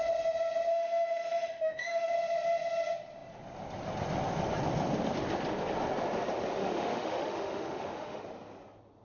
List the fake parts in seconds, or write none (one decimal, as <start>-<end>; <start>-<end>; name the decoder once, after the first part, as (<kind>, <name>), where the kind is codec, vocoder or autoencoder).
0.7-2.1 (autoencoder, DAC-VAE); 6.6-8.2